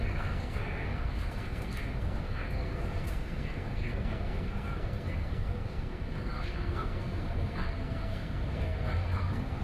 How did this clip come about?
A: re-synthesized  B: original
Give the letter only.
A